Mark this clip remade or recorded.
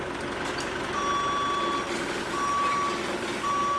recorded